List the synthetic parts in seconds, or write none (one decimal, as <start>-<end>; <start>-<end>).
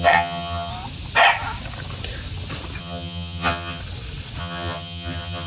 0.0-0.7; 2.8-3.8; 4.4-5.5